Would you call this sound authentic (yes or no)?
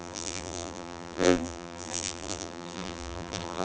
no